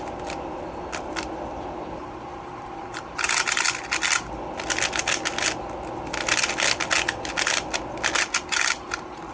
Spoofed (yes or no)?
no